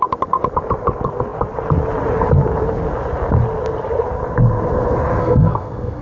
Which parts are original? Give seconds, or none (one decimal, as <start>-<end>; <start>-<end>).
0.0-5.2